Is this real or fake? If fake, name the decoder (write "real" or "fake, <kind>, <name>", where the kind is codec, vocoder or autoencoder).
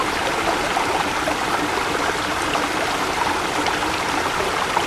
real